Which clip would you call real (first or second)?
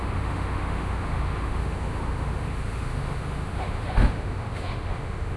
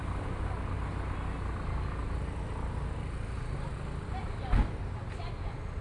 second